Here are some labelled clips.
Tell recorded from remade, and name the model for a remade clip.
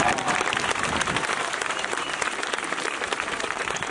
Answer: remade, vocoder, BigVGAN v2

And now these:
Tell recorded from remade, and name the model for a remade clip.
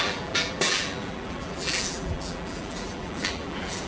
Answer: remade, vocoder, BigVGAN v2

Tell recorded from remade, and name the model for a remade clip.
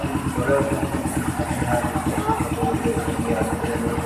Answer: recorded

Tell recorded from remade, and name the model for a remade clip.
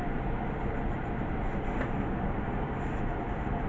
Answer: remade, vocoder, BigVGAN v2